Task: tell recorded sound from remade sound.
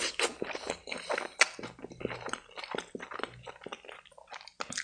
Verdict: recorded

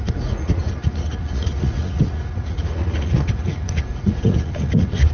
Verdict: remade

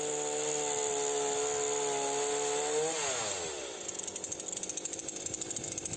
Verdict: recorded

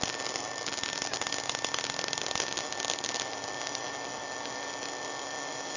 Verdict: recorded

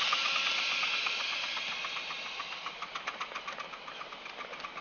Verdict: recorded